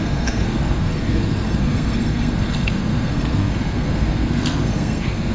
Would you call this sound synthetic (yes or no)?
yes